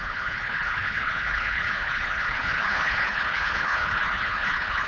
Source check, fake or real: fake